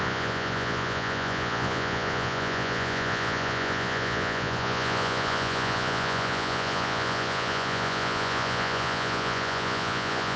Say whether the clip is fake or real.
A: fake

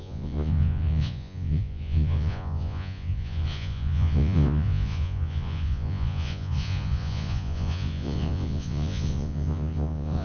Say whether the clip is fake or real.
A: fake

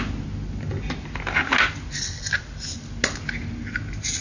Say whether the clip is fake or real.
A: real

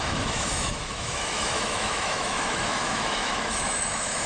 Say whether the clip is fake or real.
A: fake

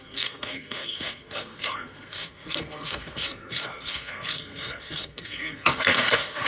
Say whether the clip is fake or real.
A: fake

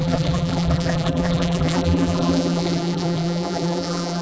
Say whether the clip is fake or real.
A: fake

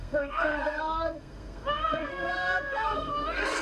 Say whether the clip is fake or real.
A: fake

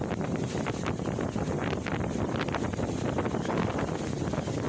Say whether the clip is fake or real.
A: real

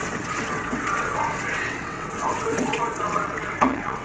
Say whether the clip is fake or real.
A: fake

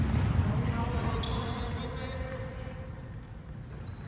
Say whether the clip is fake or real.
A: real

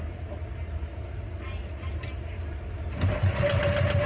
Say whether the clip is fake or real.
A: real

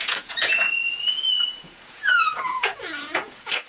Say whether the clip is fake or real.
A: fake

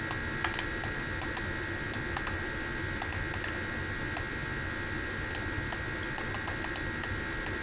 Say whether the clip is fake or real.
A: real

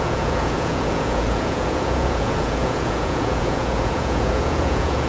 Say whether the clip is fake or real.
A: fake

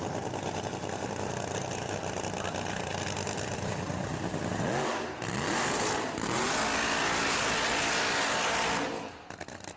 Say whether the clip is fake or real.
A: real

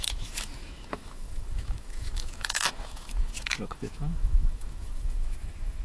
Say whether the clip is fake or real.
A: fake